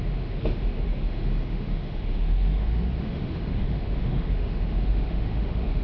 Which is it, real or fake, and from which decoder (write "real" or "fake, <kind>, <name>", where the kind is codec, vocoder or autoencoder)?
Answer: fake, autoencoder, DAC-VAE